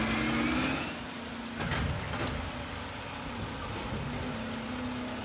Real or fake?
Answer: real